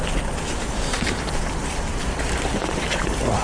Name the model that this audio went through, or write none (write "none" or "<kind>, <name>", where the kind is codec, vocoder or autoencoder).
none